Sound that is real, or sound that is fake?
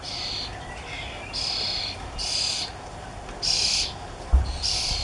real